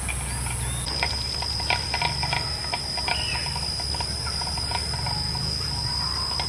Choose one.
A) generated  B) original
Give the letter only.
B